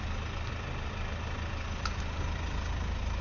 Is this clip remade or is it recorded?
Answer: recorded